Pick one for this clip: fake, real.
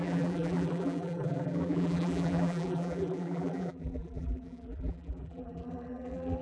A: fake